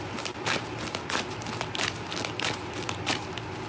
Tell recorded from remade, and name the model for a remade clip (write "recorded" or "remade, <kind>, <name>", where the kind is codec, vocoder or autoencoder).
recorded